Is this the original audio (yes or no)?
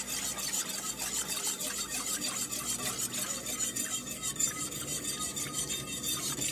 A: yes